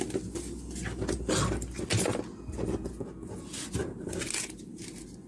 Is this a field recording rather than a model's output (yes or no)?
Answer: yes